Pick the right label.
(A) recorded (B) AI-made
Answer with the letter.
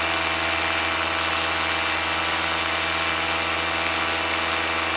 A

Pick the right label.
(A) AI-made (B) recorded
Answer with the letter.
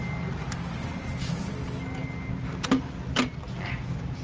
B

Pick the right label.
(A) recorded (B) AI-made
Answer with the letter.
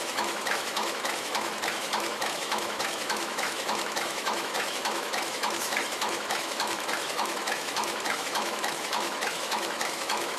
B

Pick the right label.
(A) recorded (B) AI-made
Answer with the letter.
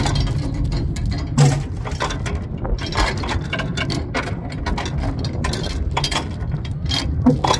A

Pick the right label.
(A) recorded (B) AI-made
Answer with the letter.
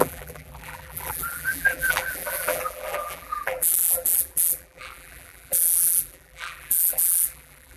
B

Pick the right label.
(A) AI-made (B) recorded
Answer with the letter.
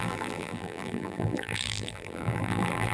A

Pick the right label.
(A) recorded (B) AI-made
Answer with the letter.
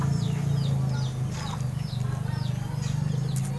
A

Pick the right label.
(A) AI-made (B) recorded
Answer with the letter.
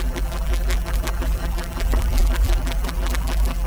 A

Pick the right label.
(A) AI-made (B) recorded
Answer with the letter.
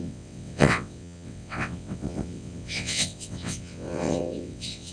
A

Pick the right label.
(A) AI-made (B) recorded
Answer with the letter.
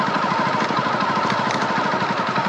B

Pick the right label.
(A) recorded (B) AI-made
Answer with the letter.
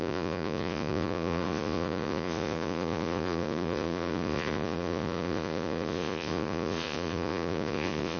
B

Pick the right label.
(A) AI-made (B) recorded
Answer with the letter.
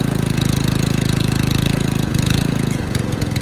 A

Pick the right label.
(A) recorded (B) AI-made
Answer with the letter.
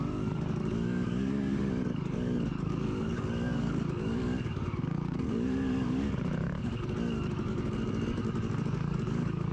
B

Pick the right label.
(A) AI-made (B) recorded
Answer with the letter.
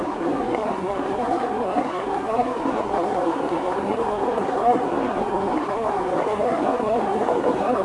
A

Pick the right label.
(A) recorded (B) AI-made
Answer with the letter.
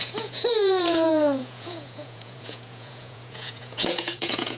B